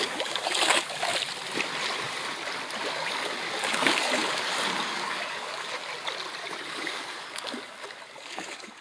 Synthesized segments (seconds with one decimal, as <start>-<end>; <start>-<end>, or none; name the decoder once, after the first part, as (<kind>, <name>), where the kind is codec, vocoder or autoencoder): 0.0-1.1 (codec, DAC); 2.9-5.9; 6.7-8.8

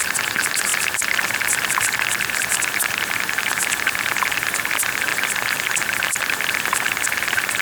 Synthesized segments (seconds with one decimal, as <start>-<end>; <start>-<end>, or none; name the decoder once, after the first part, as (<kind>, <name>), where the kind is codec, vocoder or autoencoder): none

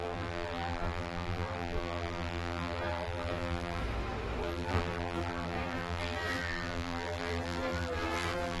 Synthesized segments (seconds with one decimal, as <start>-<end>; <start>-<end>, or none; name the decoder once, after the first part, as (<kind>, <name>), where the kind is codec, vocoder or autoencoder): 0.0-3.8 (vocoder, BigVGAN v2); 4.4-8.6